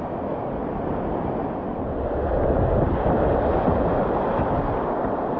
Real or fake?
real